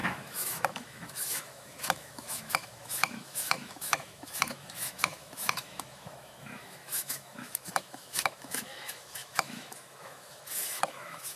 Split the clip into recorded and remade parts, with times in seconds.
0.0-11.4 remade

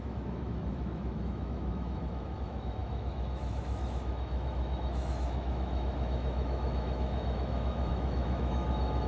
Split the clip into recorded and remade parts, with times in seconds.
0.0-9.1 remade